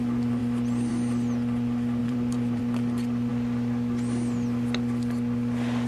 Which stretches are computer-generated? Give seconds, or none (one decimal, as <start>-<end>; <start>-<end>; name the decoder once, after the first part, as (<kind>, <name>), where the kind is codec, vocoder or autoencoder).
2.0-2.6 (vocoder, BigVGAN v2)